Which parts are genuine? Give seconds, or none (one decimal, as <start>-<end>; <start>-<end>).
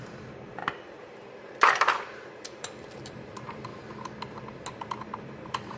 3.7-5.2